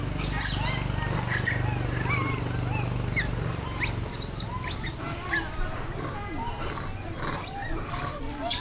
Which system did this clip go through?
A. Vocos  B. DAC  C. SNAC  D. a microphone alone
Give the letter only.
D